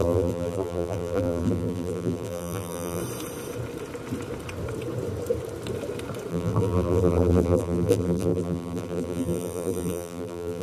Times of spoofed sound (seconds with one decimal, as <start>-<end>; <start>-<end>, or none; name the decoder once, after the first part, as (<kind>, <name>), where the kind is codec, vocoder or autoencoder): 0.0-3.0 (vocoder, BigVGAN v2); 6.3-10.6